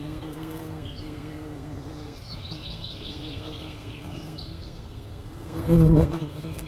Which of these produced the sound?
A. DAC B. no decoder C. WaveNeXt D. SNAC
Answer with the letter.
D